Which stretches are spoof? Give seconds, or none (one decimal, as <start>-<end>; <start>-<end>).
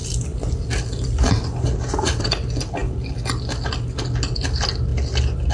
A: none